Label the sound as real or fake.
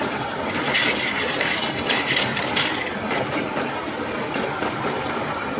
fake